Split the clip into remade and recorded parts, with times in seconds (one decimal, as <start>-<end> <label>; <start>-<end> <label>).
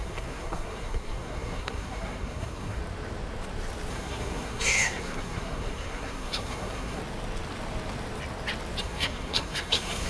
0.0-2.8 remade; 2.8-3.9 recorded; 3.9-7.0 remade; 7.0-8.8 recorded; 8.8-10.1 remade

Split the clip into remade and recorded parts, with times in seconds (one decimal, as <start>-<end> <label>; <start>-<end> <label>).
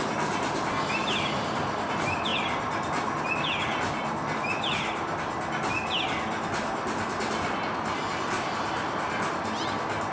0.0-10.1 recorded